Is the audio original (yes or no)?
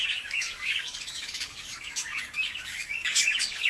no